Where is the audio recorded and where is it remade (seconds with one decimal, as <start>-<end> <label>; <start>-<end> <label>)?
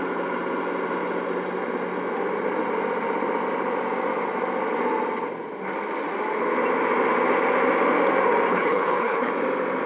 0.0-8.5 recorded; 8.5-9.3 remade; 9.3-9.9 recorded